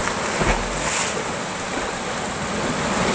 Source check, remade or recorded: recorded